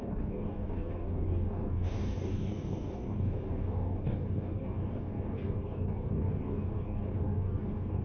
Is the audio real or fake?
fake